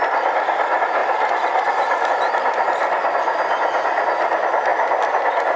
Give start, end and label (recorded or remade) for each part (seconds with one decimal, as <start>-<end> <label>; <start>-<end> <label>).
0.0-5.6 recorded